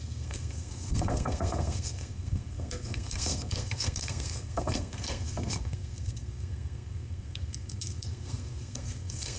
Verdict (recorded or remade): remade